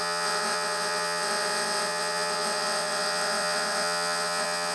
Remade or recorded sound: remade